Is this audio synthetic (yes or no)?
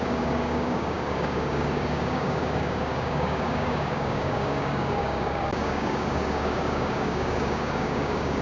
yes